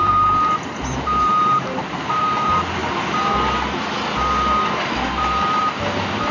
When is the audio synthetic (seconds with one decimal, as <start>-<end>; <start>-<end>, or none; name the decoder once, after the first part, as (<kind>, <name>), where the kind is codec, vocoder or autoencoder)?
0.0-2.8 (vocoder, BigVGAN v2); 4.8-6.3